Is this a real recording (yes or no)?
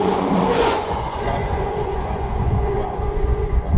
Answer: no